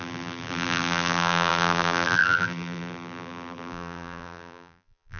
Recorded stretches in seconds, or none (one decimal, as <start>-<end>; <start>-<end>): none